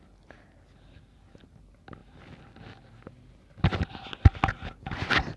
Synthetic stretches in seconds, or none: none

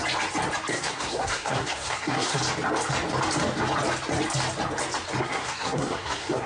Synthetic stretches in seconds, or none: 0.7-2.4 (codec, SNAC); 5.2-6.5

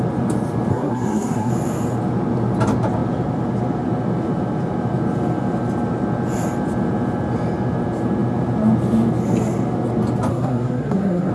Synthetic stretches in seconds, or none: 0.7-1.5 (codec, SNAC); 10.3-11.3

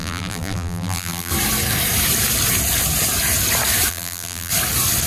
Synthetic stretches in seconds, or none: 0.0-1.3 (vocoder, BigVGAN v2); 3.9-4.5

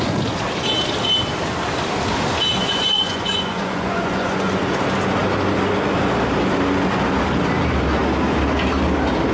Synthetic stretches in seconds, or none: 2.6-4.6 (vocoder, Vocos)

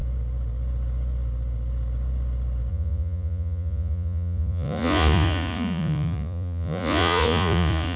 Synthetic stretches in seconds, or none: 2.7-8.0 (vocoder, Vocos)

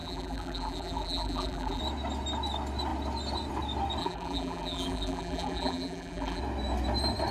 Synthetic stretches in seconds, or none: 0.0-1.8 (vocoder, BigVGAN v2); 4.0-6.4

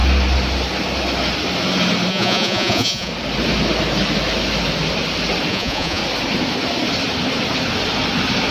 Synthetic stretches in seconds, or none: 2.1-3.1 (vocoder, Vocos); 5.5-6.0